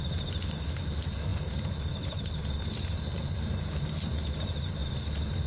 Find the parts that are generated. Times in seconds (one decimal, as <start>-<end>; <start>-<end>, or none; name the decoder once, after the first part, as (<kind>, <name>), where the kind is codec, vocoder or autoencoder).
0.0-4.8 (vocoder, BigVGAN v2)